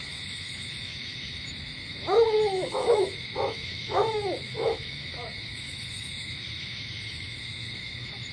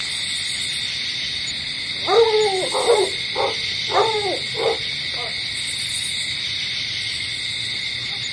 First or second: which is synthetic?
first